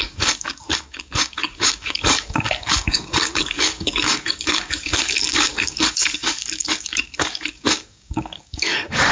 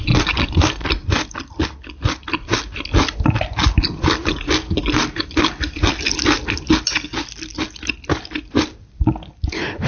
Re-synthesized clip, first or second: first